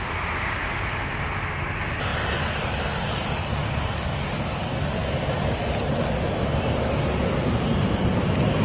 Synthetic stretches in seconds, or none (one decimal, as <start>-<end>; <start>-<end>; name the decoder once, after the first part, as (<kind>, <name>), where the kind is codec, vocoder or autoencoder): none